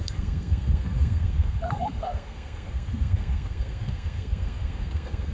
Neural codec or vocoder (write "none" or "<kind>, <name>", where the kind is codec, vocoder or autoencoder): codec, SNAC